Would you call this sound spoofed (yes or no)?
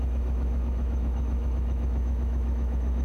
yes